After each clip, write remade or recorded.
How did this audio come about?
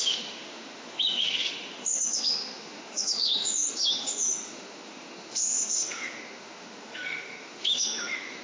remade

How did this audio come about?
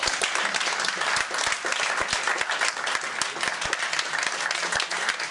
recorded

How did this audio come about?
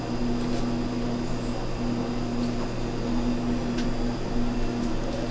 recorded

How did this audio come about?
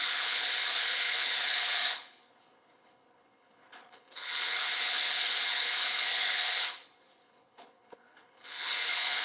remade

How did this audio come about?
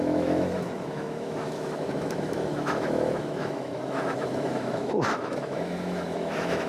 remade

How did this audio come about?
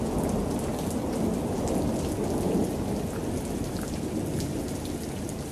recorded